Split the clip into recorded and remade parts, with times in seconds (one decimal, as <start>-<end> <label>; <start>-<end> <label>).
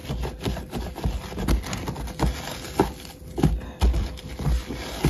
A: 0.0-5.1 recorded